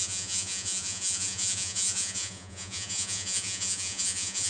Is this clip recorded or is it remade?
remade